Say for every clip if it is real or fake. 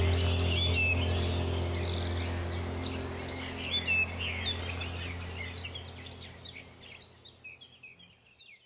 real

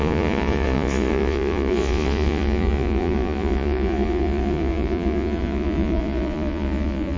fake